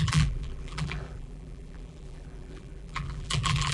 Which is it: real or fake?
fake